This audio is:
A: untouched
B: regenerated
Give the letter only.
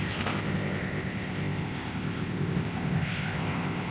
B